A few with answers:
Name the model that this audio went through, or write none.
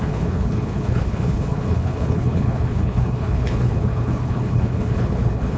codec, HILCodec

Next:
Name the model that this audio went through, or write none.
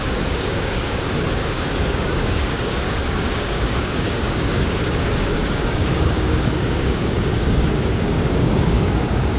codec, DAC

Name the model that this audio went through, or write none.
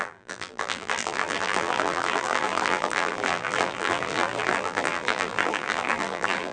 vocoder, BigVGAN v2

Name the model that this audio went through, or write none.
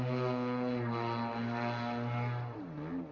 none